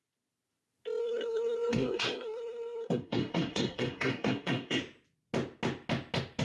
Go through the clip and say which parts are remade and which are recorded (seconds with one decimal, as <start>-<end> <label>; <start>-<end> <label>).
0.0-1.0 recorded; 1.0-4.8 remade; 4.8-6.4 recorded